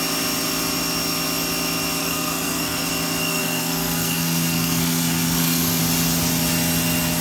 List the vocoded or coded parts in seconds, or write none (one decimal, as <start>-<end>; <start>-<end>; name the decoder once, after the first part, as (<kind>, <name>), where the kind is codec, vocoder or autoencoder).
2.0-2.9 (codec, SNAC); 3.3-5.8